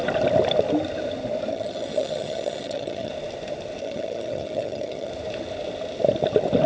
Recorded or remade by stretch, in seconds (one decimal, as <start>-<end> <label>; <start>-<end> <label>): 0.0-1.5 recorded; 1.5-3.1 remade; 3.1-3.8 recorded; 3.8-5.1 remade; 5.1-6.7 recorded